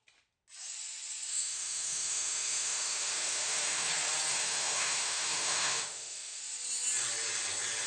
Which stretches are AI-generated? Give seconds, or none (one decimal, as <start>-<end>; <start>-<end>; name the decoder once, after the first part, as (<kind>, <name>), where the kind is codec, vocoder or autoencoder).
1.3-3.9 (autoencoder, DAC-VAE); 4.3-6.4